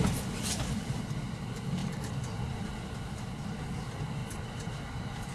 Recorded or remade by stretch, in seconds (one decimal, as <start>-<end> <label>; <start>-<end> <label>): 0.0-1.8 remade; 1.8-2.5 recorded; 2.5-4.2 remade; 4.2-5.3 recorded